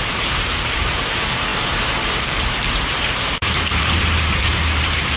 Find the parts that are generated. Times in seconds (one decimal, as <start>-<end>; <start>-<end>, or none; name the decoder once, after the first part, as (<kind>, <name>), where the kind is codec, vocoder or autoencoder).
0.0-5.2 (vocoder, BigVGAN v2)